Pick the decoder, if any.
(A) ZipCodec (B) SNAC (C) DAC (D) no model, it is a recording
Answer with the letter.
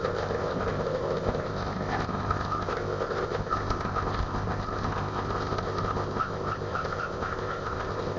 A